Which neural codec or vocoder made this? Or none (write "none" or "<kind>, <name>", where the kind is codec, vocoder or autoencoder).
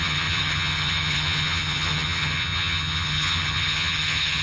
vocoder, HiFi-GAN